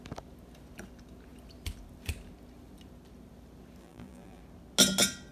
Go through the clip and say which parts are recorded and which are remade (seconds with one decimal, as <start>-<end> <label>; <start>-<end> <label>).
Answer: 0.0-3.8 recorded; 3.8-4.4 remade; 4.4-5.3 recorded